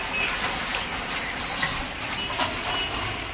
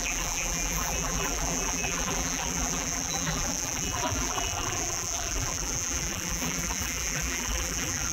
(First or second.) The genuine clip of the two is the first